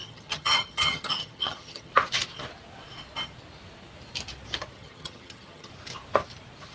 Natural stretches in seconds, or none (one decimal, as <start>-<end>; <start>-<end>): 1.9-4.7; 5.7-6.7